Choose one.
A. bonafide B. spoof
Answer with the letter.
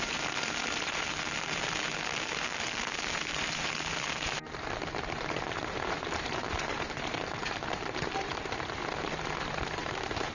B